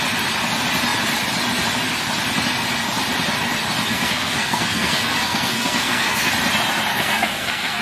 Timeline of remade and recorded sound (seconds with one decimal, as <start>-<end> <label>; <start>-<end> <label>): 0.0-3.9 recorded; 3.9-6.3 remade; 6.3-6.9 recorded; 6.9-7.8 remade